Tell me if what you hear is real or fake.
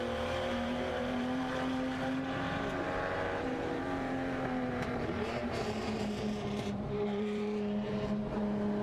fake